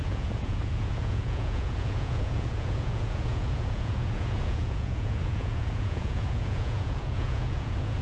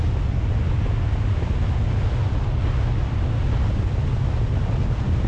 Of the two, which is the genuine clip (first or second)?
second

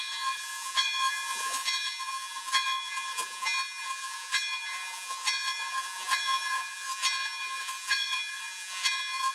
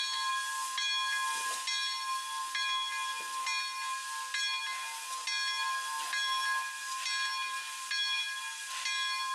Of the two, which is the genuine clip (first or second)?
second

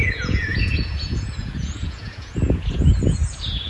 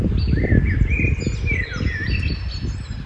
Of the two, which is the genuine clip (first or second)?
second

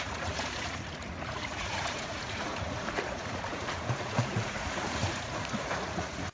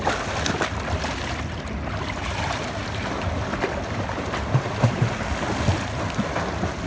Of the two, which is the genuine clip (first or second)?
second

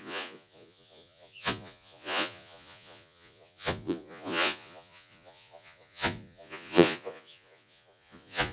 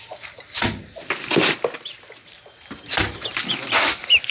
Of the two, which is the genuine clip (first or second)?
second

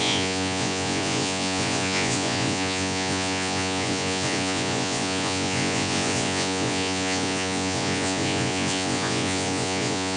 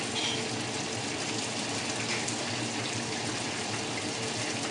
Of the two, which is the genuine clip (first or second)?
second